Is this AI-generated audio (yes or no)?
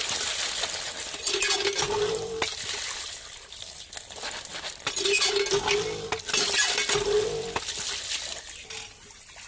no